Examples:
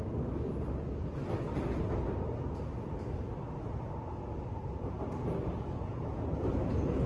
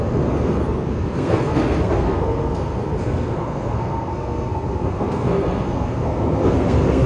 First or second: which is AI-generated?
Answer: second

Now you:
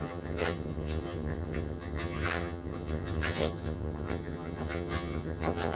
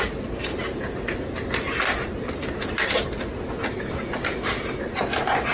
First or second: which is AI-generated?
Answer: first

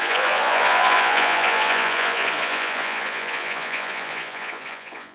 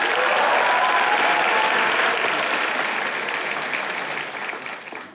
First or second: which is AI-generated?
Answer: first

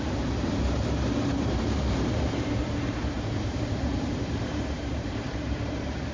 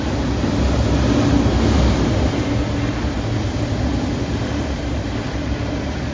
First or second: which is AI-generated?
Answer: first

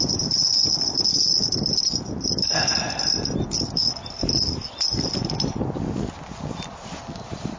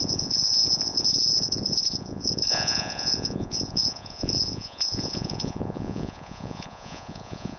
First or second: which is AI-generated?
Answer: second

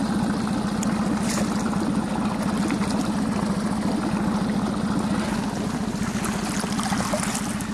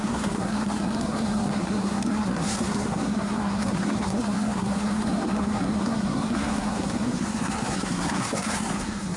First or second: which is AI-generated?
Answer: second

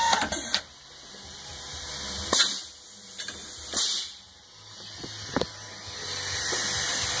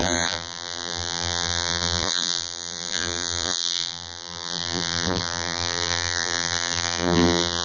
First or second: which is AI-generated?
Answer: second